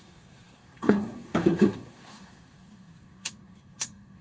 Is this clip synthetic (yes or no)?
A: yes